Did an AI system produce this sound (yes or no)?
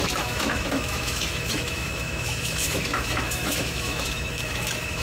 yes